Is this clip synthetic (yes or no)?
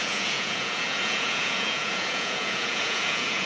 yes